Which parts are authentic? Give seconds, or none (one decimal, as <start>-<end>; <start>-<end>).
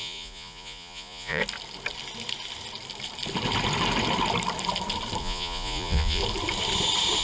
1.4-5.2; 6.2-7.2